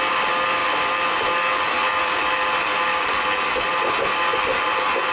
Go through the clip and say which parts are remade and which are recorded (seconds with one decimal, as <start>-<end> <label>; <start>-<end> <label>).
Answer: 0.0-5.1 recorded